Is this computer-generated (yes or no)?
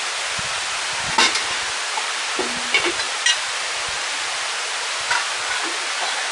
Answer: no